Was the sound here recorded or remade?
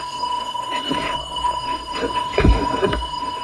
remade